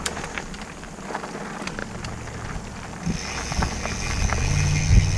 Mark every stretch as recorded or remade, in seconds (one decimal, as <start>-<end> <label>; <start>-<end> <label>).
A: 0.0-5.2 recorded